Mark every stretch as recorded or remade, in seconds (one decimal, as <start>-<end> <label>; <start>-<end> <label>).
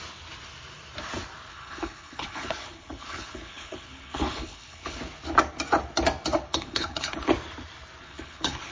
0.0-1.5 recorded; 1.5-5.0 remade; 5.0-6.5 recorded; 6.5-7.3 remade; 7.3-8.0 recorded; 8.0-8.7 remade